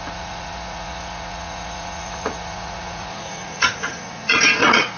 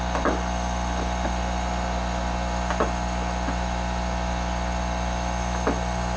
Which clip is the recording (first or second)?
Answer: second